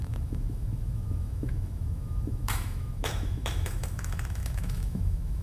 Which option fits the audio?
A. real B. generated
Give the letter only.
B